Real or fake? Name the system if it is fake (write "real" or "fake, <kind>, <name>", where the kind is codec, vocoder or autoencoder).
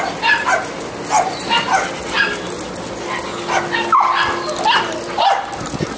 real